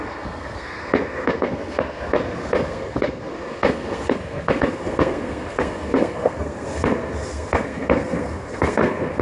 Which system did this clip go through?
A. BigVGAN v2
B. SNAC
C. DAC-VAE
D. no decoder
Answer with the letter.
B